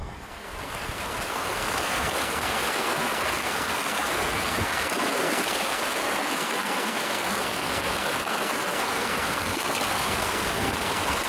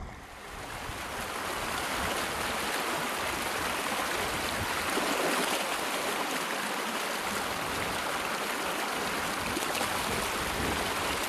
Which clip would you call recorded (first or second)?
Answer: second